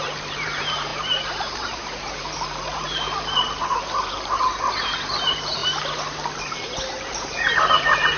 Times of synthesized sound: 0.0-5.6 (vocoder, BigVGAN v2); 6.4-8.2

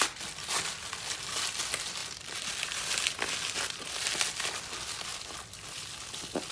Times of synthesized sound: 2.0-3.9 (vocoder, BigVGAN v2); 5.1-6.5

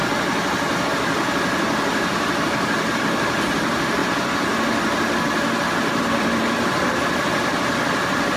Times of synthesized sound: 0.9-4.0 (vocoder, BigVGAN v2); 6.0-8.4

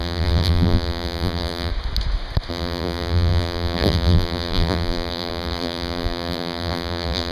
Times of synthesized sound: 0.0-1.7 (vocoder, BigVGAN v2); 2.5-7.3

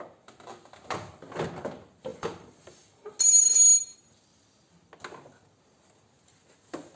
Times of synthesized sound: 2.1-3.1 (vocoder, BigVGAN v2)

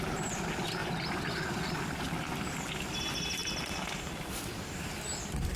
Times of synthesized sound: none

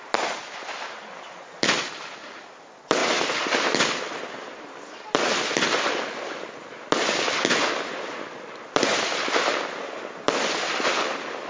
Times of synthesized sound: none

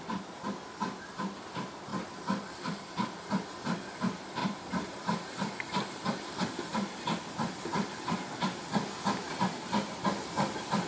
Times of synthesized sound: 4.4-5.3 (vocoder, BigVGAN v2)